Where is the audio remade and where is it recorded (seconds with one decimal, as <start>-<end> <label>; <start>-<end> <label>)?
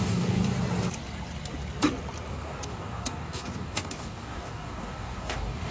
0.0-0.5 remade; 0.5-2.3 recorded; 2.3-5.7 remade